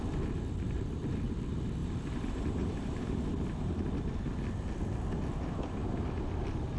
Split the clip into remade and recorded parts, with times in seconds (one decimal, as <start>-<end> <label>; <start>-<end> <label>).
0.0-1.8 recorded; 1.8-3.2 remade; 3.2-6.8 recorded

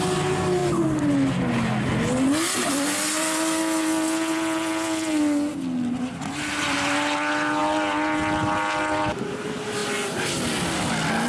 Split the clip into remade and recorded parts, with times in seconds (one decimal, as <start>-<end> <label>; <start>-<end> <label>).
0.0-11.3 recorded

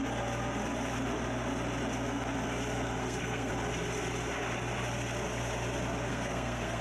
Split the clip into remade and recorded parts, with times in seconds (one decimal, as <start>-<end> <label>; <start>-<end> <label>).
0.0-3.0 recorded; 3.0-3.5 remade; 3.5-6.1 recorded; 6.1-6.8 remade

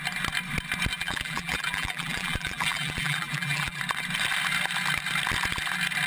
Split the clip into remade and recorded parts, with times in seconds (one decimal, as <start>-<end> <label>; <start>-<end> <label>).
0.0-0.9 recorded; 0.9-3.8 remade; 3.8-6.1 recorded

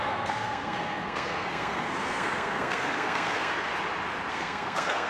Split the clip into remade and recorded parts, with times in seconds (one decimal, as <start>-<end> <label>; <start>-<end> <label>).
0.0-3.7 remade; 3.7-4.3 recorded; 4.3-5.1 remade